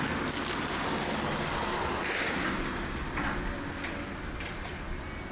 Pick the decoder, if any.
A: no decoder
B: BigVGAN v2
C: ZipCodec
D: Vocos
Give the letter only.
A